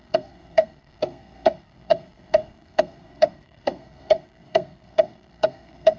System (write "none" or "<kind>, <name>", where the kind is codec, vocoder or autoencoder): codec, SNAC